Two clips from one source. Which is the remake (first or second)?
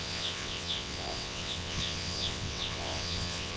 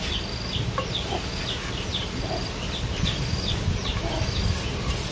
first